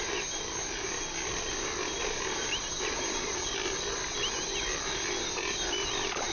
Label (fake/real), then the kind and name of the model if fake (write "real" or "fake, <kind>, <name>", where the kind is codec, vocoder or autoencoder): real